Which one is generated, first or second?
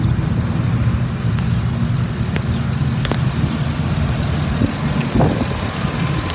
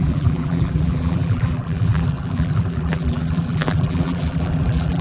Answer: second